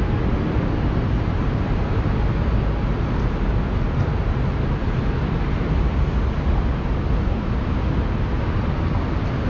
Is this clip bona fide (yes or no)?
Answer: yes